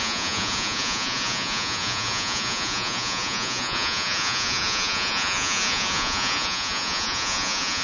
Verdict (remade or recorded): remade